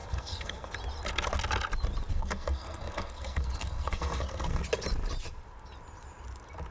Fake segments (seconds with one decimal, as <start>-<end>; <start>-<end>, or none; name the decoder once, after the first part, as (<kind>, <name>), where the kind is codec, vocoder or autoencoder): 0.0-0.7 (codec, SNAC); 2.1-4.6